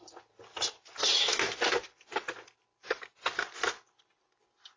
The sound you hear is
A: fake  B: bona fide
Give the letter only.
B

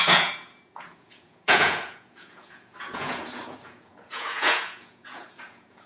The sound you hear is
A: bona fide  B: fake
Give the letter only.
B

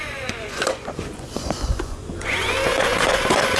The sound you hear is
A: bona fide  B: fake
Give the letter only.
B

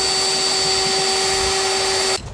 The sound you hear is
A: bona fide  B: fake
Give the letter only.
A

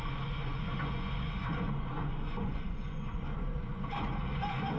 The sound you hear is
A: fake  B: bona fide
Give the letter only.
A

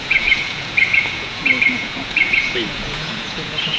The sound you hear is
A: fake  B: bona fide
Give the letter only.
A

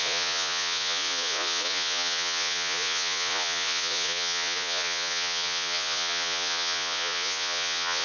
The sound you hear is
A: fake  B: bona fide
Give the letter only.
A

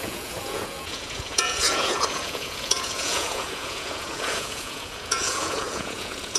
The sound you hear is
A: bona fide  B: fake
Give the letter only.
B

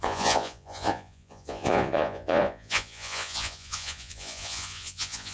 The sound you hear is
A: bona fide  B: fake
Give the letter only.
B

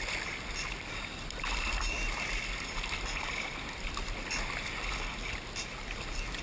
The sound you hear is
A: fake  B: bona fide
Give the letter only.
B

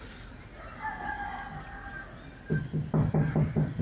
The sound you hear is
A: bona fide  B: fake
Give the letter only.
A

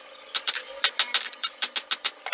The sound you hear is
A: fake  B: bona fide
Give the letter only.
B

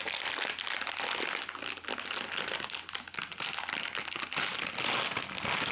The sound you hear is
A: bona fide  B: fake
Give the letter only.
A